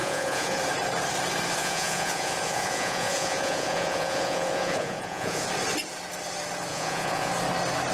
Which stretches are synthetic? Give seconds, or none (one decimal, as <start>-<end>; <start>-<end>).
0.0-0.6; 1.6-5.5; 6.7-7.3